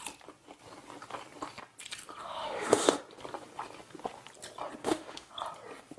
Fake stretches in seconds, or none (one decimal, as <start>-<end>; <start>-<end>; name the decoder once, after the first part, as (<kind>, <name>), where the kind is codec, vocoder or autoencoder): 2.2-3.0 (autoencoder, DAC-VAE); 4.8-5.3